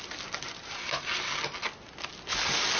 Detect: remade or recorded recorded